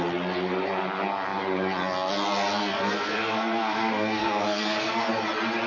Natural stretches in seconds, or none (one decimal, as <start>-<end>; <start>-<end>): 0.0-2.6; 5.1-5.7